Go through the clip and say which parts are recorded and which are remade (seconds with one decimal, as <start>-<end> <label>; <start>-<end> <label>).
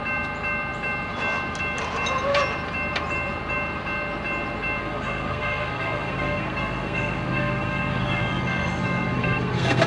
0.0-4.8 recorded; 4.8-9.9 remade